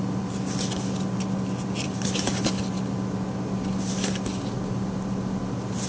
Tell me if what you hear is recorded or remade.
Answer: recorded